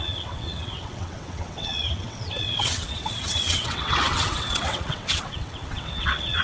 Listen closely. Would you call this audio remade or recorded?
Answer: remade